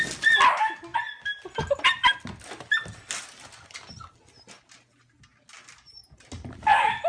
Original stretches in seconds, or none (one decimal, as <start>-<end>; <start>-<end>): 0.0-7.1